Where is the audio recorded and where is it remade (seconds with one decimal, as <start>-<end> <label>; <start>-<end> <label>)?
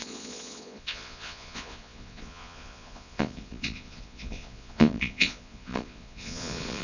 0.0-6.8 remade